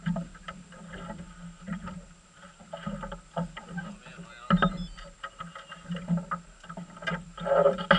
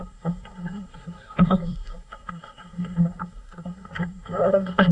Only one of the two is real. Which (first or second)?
first